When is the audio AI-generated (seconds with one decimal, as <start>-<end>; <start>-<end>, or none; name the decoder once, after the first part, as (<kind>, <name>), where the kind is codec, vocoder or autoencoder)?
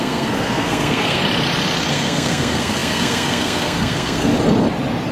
0.0-1.2 (codec, SNAC); 1.9-4.3